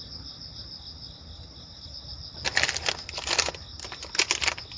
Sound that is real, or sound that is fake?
real